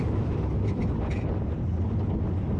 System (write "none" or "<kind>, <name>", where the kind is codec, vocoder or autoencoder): none